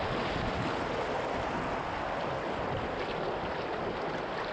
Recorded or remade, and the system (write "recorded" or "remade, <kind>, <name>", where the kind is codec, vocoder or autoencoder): recorded